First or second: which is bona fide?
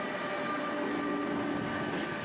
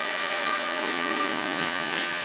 first